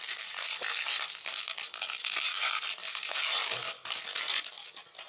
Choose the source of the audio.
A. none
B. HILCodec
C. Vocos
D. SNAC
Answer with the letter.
A